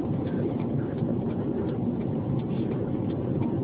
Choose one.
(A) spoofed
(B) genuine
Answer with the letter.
A